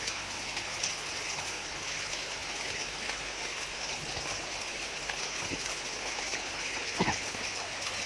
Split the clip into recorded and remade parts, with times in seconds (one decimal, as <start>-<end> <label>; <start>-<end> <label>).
0.0-8.1 remade